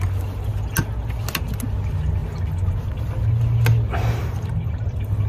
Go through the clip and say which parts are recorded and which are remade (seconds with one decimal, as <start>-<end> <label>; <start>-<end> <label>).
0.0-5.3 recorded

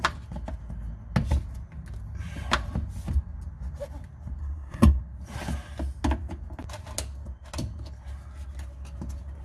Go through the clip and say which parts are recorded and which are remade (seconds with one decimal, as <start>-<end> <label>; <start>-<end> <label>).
0.0-4.4 recorded; 4.4-5.0 remade; 5.0-9.4 recorded

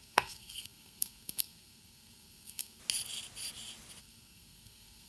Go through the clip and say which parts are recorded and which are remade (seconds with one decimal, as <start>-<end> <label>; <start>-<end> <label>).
0.0-2.8 remade; 2.8-4.0 recorded; 4.0-5.1 remade

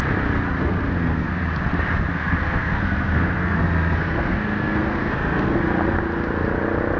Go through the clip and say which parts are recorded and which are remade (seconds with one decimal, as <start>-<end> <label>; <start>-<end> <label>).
0.0-0.6 recorded; 0.6-1.3 remade; 1.3-2.1 recorded; 2.1-5.6 remade; 5.6-7.0 recorded

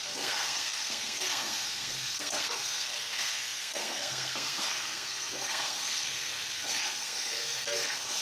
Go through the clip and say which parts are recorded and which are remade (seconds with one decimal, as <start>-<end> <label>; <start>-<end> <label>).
0.0-8.2 remade